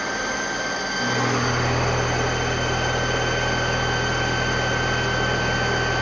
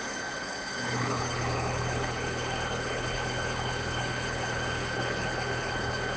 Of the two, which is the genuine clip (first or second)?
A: first